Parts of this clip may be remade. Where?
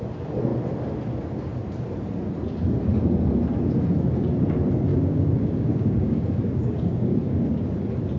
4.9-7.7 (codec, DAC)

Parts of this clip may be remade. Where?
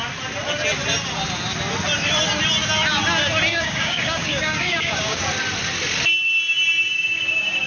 3.5-5.2 (codec, DAC); 6.9-7.7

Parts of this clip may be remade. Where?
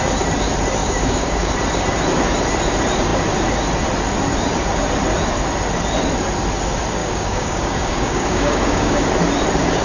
0.8-1.5 (codec, DAC); 7.0-9.0